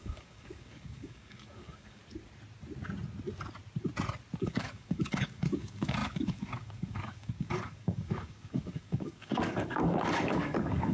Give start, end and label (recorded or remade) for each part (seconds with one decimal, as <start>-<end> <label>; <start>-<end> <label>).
0.0-2.0 remade; 2.0-4.4 recorded; 4.4-10.9 remade